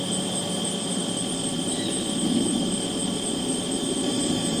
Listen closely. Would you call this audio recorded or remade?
remade